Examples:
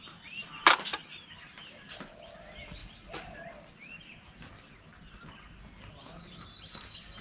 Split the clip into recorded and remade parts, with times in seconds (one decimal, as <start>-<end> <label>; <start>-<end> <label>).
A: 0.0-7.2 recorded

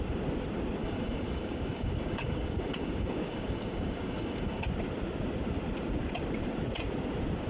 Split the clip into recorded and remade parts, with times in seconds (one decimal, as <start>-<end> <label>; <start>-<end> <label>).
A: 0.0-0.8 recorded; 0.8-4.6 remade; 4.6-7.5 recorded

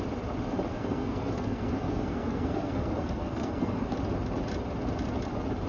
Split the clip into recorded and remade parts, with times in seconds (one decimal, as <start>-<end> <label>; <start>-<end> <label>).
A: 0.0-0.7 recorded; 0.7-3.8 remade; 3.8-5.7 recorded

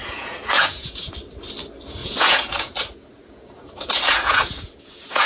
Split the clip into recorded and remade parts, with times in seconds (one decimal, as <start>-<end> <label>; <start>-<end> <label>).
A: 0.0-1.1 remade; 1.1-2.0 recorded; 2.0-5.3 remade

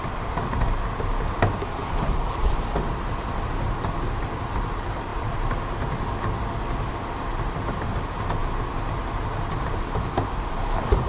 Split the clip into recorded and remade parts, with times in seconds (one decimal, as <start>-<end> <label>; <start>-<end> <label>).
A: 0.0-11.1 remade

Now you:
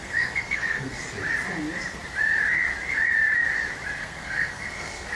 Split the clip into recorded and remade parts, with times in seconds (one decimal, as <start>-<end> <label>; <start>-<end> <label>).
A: 0.0-1.0 remade; 1.0-4.0 recorded; 4.0-5.2 remade

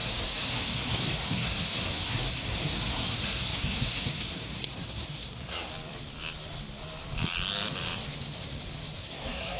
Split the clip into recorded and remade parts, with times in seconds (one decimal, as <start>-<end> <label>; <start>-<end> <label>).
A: 0.0-5.7 remade; 5.7-9.0 recorded; 9.0-9.6 remade

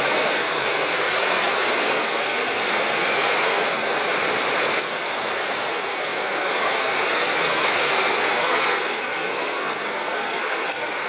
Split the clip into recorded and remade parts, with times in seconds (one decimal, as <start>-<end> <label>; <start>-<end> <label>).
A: 0.0-4.0 remade; 4.0-4.6 recorded; 4.6-11.1 remade